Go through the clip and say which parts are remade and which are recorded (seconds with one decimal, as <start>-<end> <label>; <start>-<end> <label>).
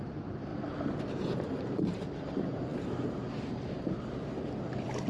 0.0-0.5 remade; 0.5-1.0 recorded; 1.0-5.1 remade